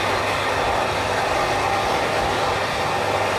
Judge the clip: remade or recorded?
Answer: recorded